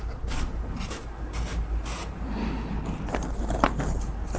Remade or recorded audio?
recorded